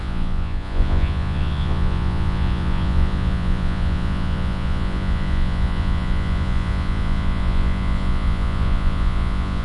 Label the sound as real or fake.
fake